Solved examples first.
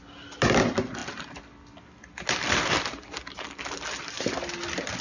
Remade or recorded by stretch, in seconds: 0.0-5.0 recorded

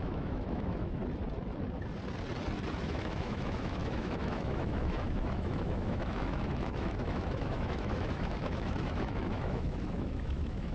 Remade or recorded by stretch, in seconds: 0.0-1.0 remade; 1.0-2.8 recorded; 2.8-10.7 remade

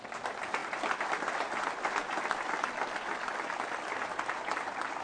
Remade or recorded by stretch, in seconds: 0.0-0.6 recorded; 0.6-3.6 remade; 3.6-5.0 recorded

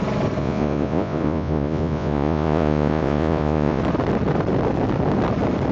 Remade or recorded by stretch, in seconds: 0.0-0.4 recorded; 0.4-3.8 remade; 3.8-5.7 recorded

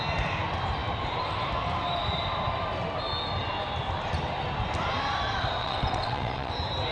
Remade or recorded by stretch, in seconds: 0.0-5.6 recorded; 5.6-6.5 remade; 6.5-6.9 recorded